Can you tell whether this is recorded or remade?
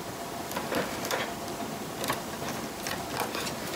recorded